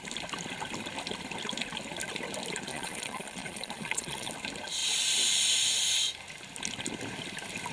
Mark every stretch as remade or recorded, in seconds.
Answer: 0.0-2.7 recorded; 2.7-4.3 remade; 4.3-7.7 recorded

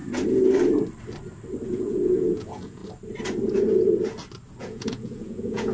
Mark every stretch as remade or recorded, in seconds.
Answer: 0.0-1.7 recorded; 1.7-2.8 remade; 2.8-4.6 recorded; 4.6-5.7 remade

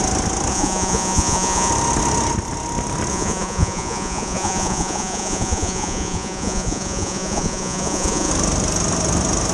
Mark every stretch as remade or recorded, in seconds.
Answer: 0.0-0.5 recorded; 0.5-1.7 remade; 1.7-3.1 recorded; 3.1-8.3 remade; 8.3-9.5 recorded